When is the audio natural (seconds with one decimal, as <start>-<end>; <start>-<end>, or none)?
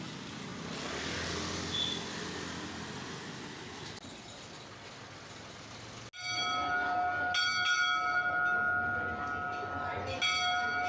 0.0-10.9